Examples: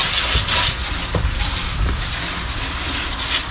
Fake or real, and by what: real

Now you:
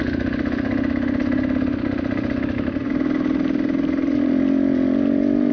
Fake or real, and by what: real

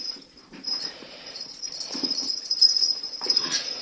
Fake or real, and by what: fake, vocoder, Vocos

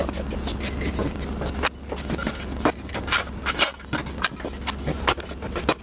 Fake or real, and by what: real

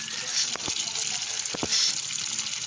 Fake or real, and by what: real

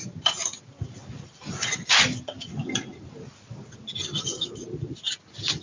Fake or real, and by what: real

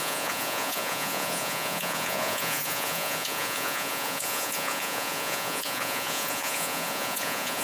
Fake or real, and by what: fake, vocoder, Vocos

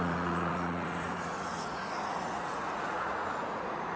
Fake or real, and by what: fake, vocoder, Vocos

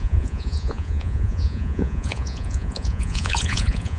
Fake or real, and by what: fake, vocoder, Vocos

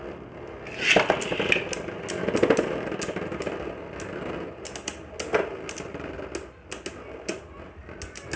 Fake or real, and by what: real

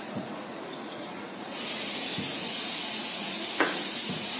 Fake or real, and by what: fake, vocoder, Vocos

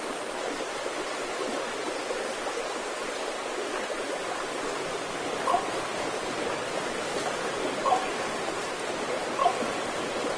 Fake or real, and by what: real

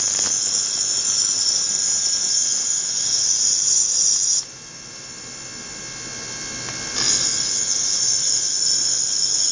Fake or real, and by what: real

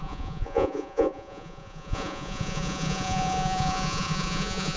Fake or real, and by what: fake, vocoder, Vocos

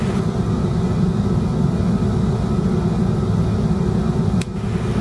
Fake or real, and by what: real